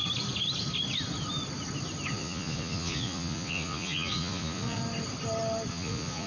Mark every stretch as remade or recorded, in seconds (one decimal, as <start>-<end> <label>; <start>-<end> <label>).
0.0-2.1 recorded; 2.1-4.8 remade; 4.8-5.7 recorded; 5.7-6.3 remade

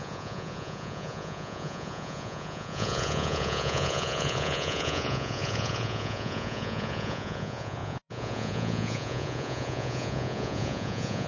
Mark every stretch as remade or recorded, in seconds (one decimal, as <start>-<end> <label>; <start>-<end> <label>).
0.0-11.3 remade